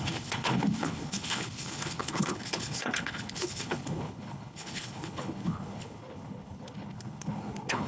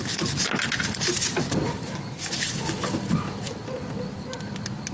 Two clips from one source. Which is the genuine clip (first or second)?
second